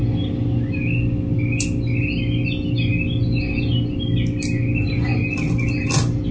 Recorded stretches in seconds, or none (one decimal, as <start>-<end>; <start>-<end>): 0.0-6.3